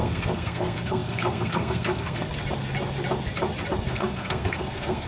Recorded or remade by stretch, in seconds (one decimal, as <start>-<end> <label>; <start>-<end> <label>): 0.0-2.2 remade; 2.2-3.9 recorded; 3.9-5.1 remade

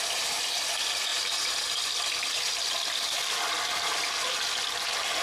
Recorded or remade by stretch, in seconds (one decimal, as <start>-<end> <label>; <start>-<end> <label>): 0.0-1.1 recorded; 1.1-4.2 remade; 4.2-5.2 recorded